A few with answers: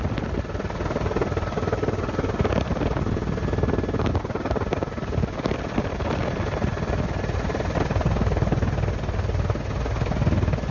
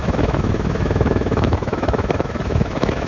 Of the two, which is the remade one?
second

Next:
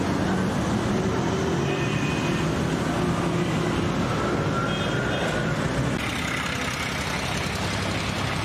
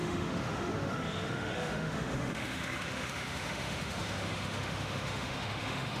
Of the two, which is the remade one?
second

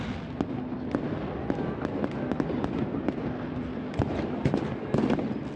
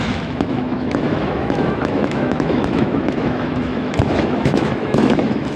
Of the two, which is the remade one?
second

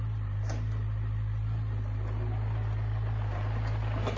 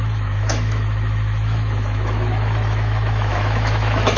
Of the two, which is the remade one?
second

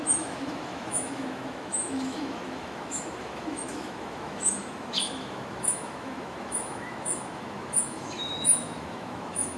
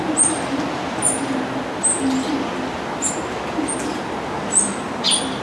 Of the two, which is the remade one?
first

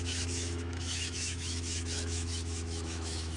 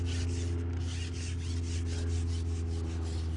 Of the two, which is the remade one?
first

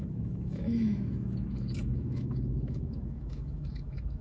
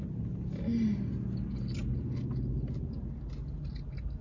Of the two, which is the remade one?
first